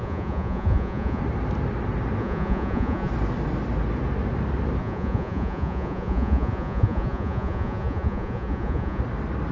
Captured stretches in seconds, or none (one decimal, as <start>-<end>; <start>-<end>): 1.2-2.2; 3.1-4.8; 9.0-9.5

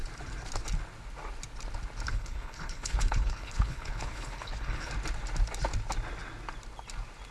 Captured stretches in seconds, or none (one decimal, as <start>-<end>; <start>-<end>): 0.0-2.1; 4.9-7.3

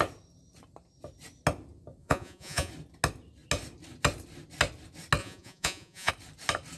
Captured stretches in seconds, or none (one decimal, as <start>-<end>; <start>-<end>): 0.0-2.0; 2.7-5.2; 6.1-6.8

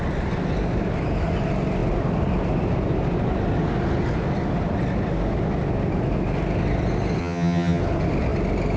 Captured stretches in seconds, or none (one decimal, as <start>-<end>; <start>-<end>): 0.0-7.2; 7.8-8.8

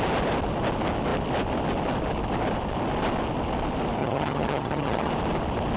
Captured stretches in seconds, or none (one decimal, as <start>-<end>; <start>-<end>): 0.0-4.0; 5.1-5.8

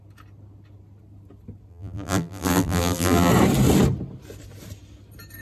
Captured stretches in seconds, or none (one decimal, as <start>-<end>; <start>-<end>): 0.0-1.7; 3.3-5.4

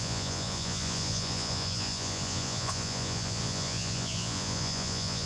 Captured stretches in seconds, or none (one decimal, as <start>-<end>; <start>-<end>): none